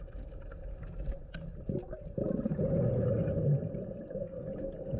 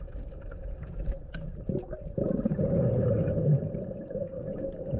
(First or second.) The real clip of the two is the first